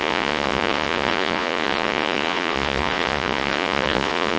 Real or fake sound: fake